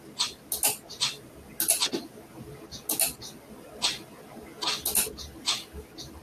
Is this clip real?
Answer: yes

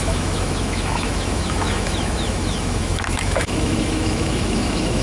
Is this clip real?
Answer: no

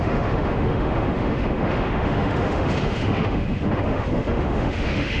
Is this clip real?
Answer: no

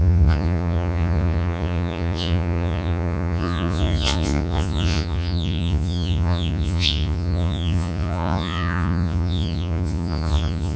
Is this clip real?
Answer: no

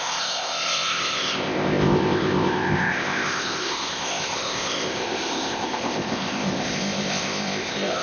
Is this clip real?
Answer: no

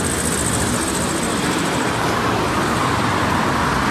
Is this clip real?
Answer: yes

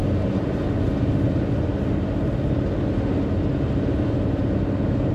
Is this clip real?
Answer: yes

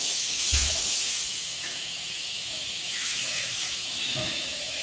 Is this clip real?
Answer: no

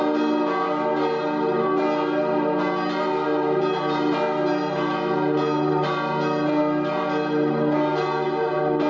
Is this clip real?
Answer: yes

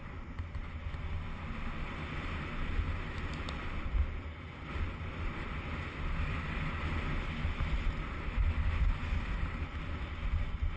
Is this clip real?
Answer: yes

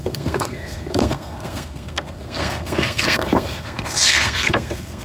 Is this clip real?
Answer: no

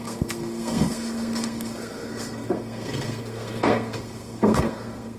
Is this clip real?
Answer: no